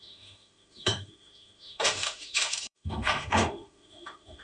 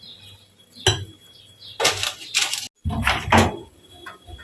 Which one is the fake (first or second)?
first